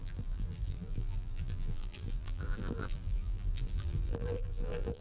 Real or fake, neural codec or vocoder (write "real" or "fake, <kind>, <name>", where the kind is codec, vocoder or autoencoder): fake, vocoder, BigVGAN v2